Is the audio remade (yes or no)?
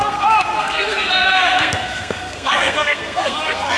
yes